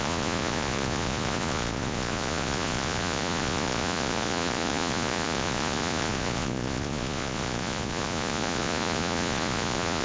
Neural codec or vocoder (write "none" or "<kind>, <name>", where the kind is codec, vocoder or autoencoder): vocoder, Vocos